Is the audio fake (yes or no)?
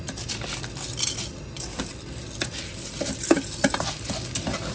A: no